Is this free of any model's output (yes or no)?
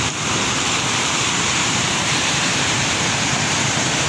no